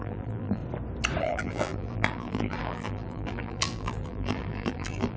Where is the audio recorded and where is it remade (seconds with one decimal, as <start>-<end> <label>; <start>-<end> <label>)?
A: 0.0-0.6 remade; 0.6-1.2 recorded; 1.2-5.2 remade